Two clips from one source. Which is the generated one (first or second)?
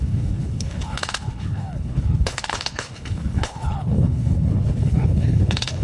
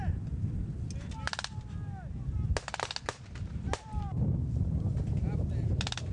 first